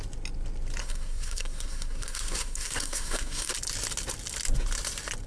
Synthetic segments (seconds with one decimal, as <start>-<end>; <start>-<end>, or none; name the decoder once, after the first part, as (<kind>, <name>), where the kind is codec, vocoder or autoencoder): 0.8-3.5 (codec, SNAC)